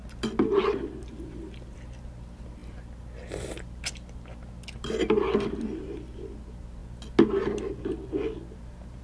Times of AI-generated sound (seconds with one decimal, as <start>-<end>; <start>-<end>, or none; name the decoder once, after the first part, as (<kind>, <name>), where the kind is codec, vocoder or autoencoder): none